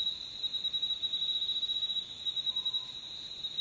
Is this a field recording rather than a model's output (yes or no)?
yes